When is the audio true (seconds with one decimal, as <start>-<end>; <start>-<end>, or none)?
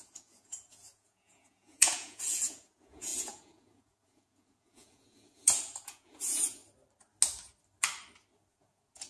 6.6-8.5